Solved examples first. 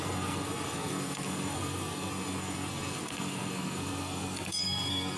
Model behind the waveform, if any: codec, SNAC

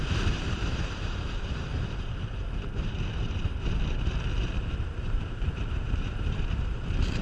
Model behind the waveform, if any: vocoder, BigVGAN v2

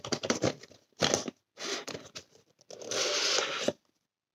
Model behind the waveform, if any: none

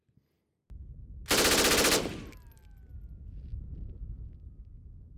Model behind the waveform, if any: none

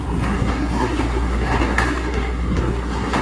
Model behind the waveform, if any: codec, SNAC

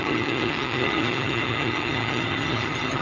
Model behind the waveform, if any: vocoder, HiFi-GAN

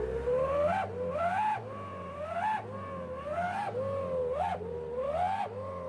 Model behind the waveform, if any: none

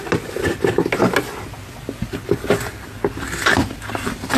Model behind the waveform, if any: none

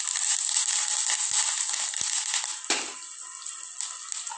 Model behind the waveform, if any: none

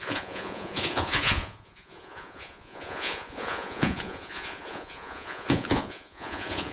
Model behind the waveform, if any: vocoder, Vocos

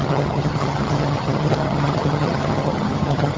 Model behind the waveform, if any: vocoder, HiFi-GAN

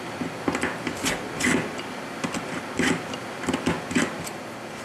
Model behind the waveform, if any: none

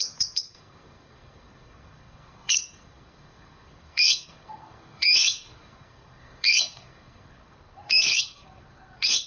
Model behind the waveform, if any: codec, SNAC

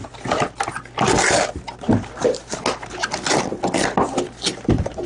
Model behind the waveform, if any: none